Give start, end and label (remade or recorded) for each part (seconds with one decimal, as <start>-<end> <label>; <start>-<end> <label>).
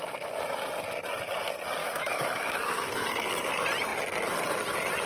0.0-1.8 recorded; 1.8-3.3 remade; 3.3-5.1 recorded